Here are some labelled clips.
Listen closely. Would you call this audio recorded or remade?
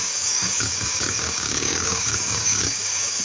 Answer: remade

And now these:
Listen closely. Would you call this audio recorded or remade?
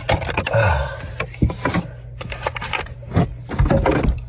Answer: recorded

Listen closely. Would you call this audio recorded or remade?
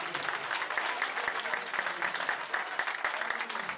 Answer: recorded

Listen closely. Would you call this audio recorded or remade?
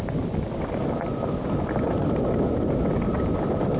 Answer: recorded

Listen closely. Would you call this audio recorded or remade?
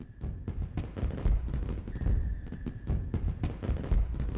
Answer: recorded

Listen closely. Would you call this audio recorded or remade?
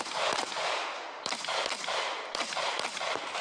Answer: recorded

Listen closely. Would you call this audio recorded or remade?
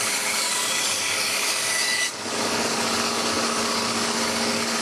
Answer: remade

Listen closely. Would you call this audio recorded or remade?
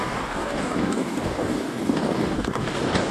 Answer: remade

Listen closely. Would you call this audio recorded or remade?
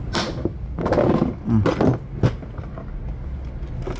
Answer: recorded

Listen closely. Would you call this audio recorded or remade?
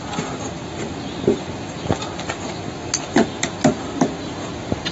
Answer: recorded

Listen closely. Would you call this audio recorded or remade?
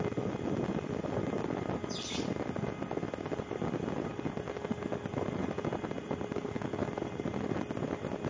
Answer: recorded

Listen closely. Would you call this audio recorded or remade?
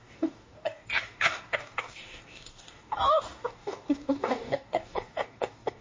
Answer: remade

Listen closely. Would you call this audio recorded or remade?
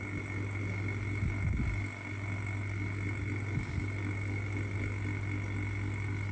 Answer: recorded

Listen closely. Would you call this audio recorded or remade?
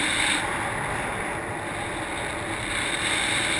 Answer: recorded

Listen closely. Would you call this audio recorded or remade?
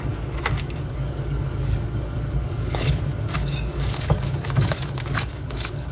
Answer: remade